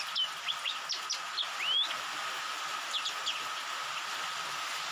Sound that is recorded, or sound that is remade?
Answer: recorded